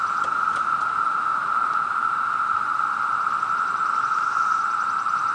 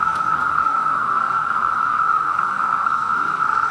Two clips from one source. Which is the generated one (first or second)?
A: second